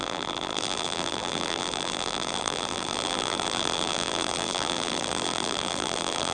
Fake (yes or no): yes